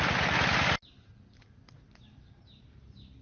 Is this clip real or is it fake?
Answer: real